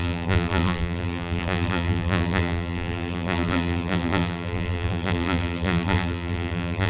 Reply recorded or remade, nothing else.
remade